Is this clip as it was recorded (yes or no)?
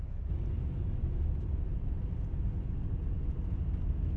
yes